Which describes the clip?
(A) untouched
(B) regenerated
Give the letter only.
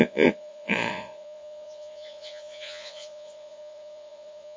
B